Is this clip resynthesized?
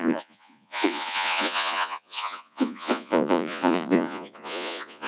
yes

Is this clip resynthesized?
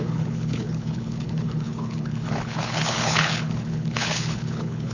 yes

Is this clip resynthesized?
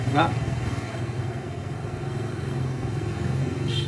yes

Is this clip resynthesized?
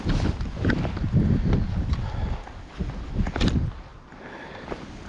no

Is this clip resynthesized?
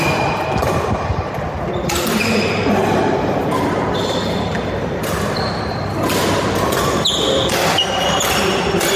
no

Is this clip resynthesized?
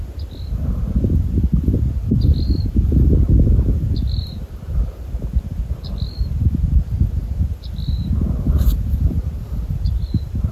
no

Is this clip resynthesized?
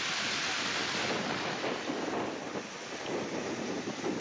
no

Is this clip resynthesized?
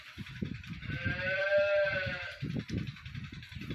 yes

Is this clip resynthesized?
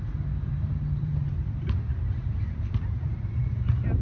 yes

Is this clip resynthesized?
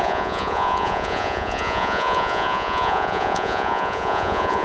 yes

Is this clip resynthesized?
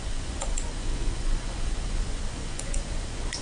yes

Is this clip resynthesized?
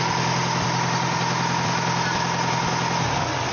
no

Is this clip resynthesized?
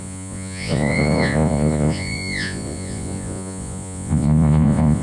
yes